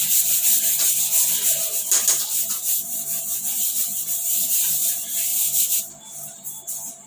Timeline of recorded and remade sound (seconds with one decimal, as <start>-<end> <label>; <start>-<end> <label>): 0.0-7.1 recorded